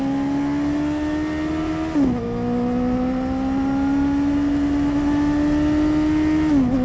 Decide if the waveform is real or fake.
real